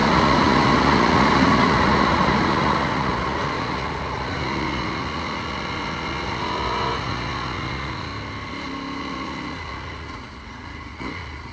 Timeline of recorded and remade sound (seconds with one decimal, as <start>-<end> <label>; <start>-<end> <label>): 0.0-8.1 remade; 8.1-9.0 recorded; 9.0-11.5 remade